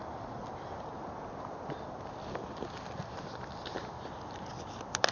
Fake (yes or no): no